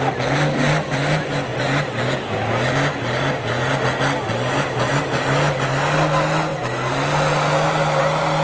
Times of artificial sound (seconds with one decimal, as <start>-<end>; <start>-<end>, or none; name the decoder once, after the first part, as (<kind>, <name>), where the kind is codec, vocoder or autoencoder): none